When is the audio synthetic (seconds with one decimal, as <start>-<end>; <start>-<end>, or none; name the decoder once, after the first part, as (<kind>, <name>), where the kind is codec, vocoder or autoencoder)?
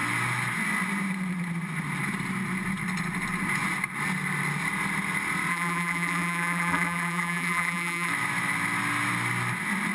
5.5-8.1 (vocoder, BigVGAN v2)